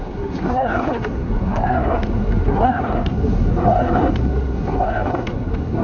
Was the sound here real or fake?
fake